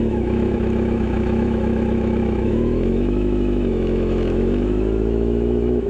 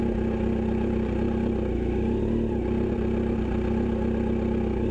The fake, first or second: first